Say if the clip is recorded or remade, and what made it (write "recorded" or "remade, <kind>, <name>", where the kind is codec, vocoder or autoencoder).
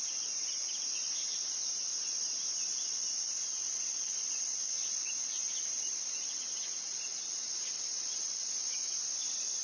remade, vocoder, Vocos